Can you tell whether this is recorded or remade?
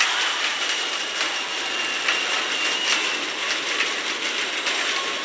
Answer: recorded